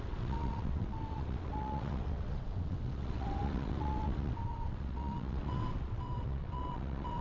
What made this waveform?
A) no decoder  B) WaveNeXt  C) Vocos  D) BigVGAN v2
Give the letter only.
B